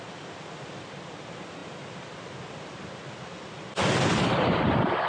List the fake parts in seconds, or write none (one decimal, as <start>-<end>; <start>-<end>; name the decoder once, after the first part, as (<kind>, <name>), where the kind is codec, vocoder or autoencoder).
none